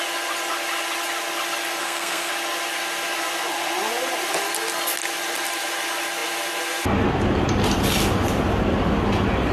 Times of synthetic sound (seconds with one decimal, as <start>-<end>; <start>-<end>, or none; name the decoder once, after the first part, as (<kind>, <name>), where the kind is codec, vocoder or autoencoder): 1.8-2.3 (codec, SNAC)